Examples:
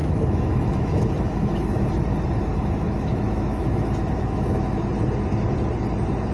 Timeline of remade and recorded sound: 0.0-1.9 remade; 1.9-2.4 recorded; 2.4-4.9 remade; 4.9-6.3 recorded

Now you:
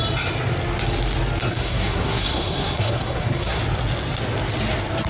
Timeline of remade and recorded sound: 0.0-1.4 recorded; 1.4-3.6 remade; 3.6-5.1 recorded

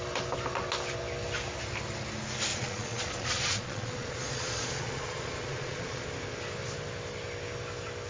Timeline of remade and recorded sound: 0.0-2.5 recorded; 2.5-6.1 remade; 6.1-8.1 recorded

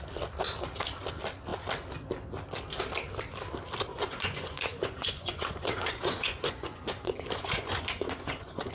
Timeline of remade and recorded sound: 0.0-3.9 recorded; 3.9-8.7 remade